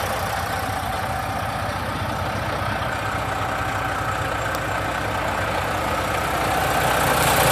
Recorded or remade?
recorded